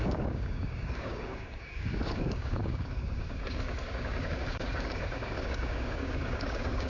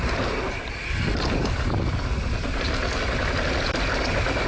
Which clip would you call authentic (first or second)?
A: second